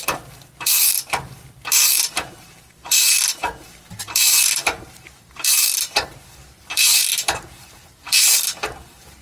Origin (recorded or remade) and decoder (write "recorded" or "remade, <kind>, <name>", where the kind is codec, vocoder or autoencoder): remade, vocoder, BigVGAN v2